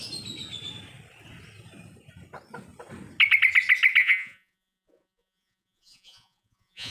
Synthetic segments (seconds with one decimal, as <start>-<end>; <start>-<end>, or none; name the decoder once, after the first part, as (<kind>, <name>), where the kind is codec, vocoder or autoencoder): 4.0-6.9 (vocoder, Vocos)

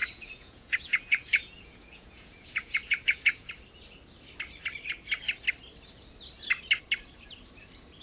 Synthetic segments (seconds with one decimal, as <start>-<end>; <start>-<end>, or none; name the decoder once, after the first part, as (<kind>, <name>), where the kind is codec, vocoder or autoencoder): 0.0-3.5 (vocoder, Vocos)

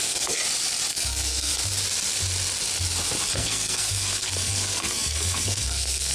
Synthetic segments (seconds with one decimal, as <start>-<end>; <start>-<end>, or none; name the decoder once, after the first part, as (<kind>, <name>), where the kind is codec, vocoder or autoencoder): 0.0-0.4 (codec, SNAC); 0.9-1.5; 3.3-6.1

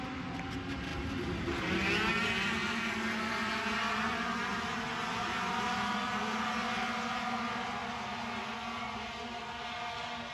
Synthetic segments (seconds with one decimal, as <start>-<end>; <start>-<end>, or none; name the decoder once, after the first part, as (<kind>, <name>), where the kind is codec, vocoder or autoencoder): none

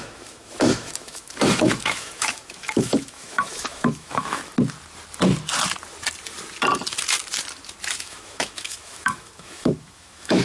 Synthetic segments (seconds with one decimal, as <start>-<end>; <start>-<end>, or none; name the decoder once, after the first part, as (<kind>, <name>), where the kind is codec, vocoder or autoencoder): 0.0-4.4 (autoencoder, DAC-VAE); 8.0-10.4

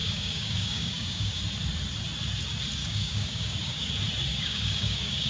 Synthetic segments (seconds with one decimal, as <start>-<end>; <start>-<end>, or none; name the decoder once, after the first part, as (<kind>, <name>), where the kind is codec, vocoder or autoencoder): 0.0-1.4 (codec, DAC); 2.8-3.9; 4.3-5.3

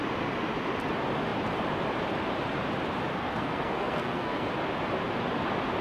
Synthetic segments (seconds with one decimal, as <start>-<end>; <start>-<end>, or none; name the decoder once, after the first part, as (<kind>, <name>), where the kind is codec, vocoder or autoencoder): 3.1-4.5 (codec, SNAC)

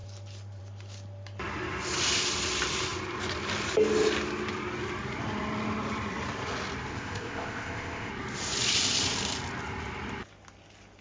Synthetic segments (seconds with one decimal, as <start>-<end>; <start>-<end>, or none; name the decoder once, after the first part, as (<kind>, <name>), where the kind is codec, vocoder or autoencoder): 6.9-8.1 (codec, ZipCodec)